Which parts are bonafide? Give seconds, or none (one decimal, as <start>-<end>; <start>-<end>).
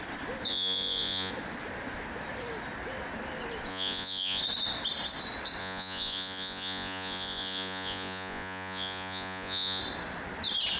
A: 0.0-0.5; 1.3-3.7; 4.4-5.6; 9.8-10.8